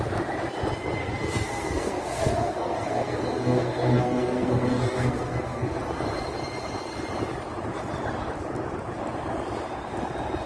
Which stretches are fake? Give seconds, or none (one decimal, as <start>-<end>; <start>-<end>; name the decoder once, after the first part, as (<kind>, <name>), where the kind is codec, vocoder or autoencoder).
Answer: 1.0-5.8 (codec, SNAC)